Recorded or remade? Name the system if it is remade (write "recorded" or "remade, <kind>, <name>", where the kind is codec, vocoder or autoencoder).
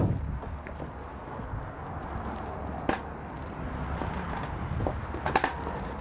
recorded